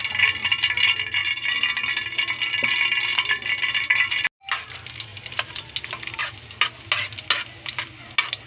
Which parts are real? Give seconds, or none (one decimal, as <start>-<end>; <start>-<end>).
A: 0.0-8.5